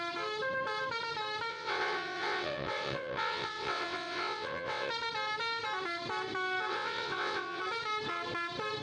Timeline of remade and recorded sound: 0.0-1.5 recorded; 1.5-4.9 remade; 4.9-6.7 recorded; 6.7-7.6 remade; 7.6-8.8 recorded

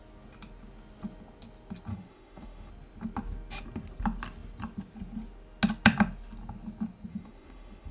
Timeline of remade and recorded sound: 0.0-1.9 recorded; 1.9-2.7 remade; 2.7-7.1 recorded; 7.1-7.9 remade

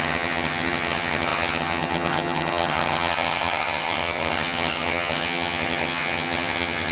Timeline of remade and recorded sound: 0.0-6.9 remade

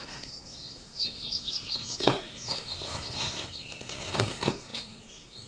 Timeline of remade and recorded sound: 0.0-5.5 remade